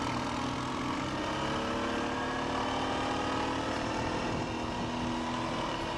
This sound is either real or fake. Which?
real